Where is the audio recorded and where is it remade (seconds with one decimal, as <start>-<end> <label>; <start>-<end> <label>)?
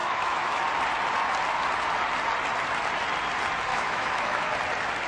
0.0-0.6 remade; 0.6-3.7 recorded; 3.7-4.5 remade; 4.5-5.1 recorded